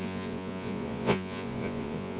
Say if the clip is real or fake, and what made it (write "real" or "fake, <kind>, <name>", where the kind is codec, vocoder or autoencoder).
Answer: fake, vocoder, Vocos